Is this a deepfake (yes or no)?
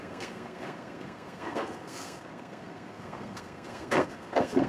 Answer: yes